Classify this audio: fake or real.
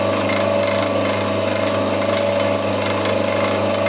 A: real